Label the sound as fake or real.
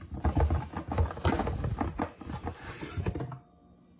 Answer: real